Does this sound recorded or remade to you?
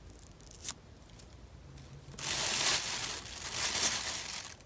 recorded